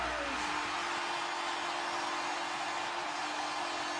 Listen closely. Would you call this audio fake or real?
real